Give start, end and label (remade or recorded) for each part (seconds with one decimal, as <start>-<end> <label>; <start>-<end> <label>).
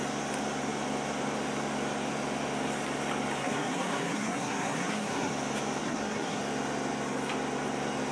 0.0-3.4 recorded; 3.4-5.3 remade; 5.3-5.8 recorded; 5.8-6.4 remade; 6.4-8.1 recorded